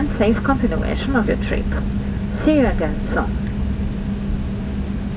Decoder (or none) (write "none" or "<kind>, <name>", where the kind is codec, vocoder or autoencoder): none